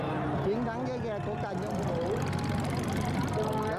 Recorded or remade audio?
recorded